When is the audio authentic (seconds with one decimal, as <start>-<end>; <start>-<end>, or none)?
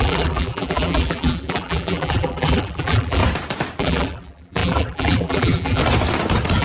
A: 3.2-3.8; 5.8-6.6